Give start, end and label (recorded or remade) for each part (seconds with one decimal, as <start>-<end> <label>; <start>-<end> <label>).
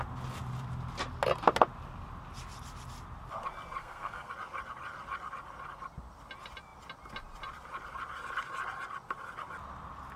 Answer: 0.0-3.8 recorded; 3.8-4.3 remade; 4.3-10.2 recorded